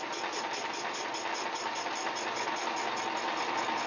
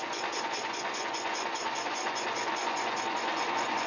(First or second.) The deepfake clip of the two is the second